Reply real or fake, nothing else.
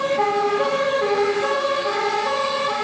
fake